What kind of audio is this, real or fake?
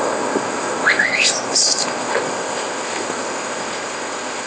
fake